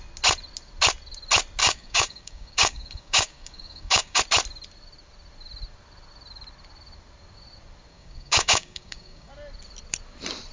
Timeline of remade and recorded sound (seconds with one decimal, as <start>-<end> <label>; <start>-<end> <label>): 0.0-1.6 recorded; 1.6-4.2 remade; 4.2-7.9 recorded; 7.9-9.3 remade; 9.3-10.5 recorded